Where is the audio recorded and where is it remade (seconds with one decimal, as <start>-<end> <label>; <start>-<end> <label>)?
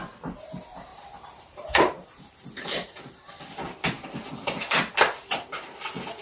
0.0-0.9 recorded; 0.9-3.3 remade; 3.3-6.2 recorded